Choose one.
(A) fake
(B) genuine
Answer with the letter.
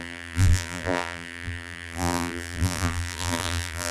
A